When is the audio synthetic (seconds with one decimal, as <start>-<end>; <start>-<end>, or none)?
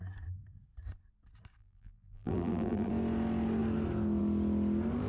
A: 1.6-2.9